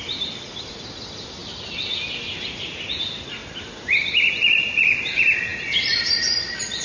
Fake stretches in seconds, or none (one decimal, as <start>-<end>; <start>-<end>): 0.0-1.4; 3.0-6.8